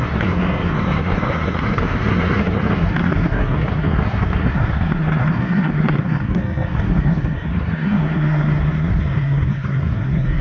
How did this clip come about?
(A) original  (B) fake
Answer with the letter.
B